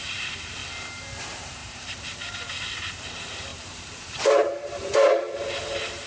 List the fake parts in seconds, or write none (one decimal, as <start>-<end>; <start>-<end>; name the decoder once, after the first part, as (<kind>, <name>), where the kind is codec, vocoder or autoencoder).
0.0-0.6 (vocoder, BigVGAN v2); 1.2-6.1